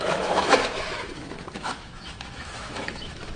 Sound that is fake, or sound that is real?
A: fake